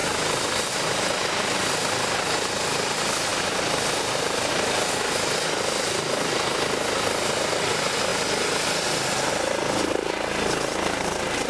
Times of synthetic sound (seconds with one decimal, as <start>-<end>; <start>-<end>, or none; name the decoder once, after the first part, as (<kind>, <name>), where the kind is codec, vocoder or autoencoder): none